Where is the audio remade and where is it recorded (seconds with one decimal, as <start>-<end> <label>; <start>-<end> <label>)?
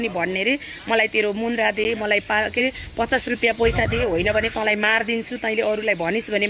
0.0-2.6 recorded; 2.6-5.4 remade; 5.4-6.5 recorded